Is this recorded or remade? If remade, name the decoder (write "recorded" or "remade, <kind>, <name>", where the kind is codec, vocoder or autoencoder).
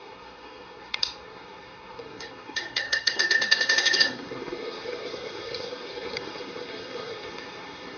remade, codec, SNAC